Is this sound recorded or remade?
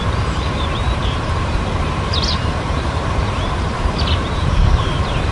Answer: remade